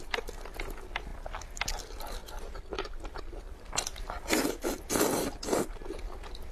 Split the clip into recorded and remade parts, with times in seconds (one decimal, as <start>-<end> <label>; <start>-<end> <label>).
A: 0.0-6.5 recorded